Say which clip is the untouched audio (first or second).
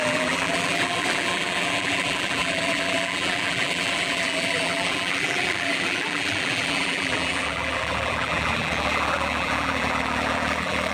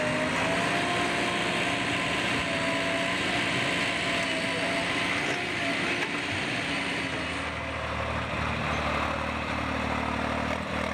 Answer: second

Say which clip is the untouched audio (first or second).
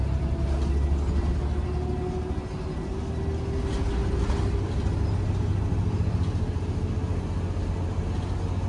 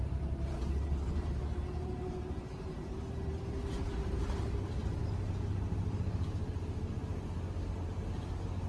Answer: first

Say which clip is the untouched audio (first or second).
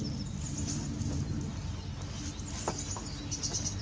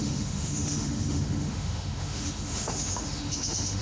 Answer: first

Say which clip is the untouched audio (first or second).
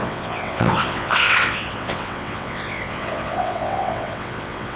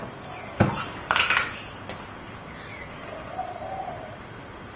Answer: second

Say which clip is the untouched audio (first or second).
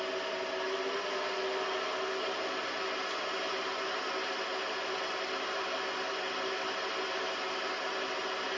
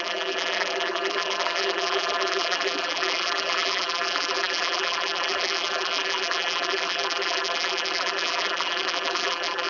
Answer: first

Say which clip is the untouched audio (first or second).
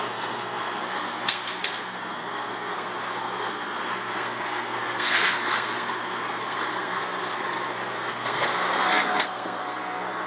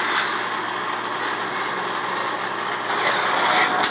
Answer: second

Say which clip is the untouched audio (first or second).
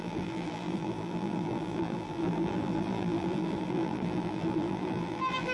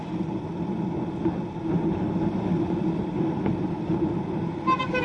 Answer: second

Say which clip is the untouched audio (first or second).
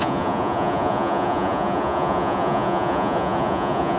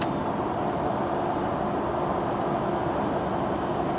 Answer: second